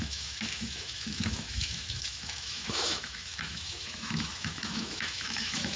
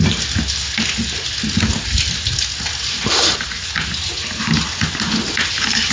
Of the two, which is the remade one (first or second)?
first